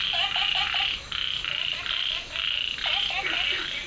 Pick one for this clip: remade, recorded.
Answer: recorded